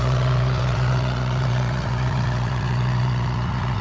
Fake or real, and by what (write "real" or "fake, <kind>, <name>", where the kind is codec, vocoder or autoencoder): fake, vocoder, Vocos